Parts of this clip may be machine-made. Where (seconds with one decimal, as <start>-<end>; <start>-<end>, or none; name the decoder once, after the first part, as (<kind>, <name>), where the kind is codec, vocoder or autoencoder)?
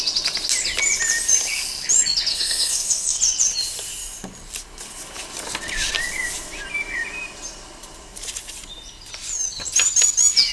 2.3-3.2 (codec, SNAC)